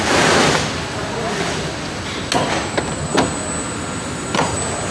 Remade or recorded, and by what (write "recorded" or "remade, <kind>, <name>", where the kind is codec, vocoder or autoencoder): recorded